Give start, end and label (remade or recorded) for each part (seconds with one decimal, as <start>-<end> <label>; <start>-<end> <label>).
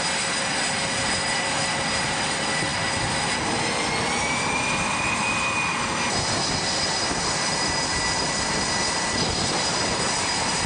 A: 0.0-10.7 recorded